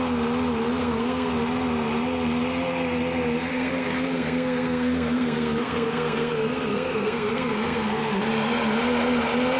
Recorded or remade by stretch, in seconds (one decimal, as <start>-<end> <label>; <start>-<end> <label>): 0.0-0.8 recorded; 0.8-1.3 remade; 1.3-3.5 recorded; 3.5-8.2 remade; 8.2-9.6 recorded